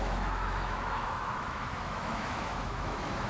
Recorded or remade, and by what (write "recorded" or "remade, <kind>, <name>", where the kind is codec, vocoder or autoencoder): remade, autoencoder, DAC-VAE